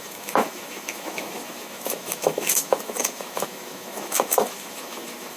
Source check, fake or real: fake